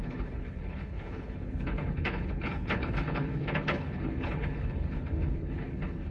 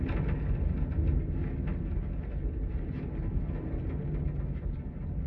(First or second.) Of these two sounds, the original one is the second